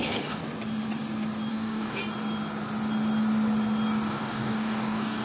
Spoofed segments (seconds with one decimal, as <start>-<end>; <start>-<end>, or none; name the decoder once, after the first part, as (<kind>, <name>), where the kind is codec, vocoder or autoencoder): 0.0-0.4 (codec, DAC); 1.5-2.0; 4.1-5.2